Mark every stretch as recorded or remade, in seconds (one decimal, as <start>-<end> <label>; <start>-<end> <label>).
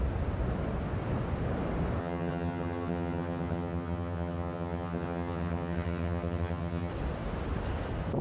0.0-2.0 recorded; 2.0-6.9 remade; 6.9-8.2 recorded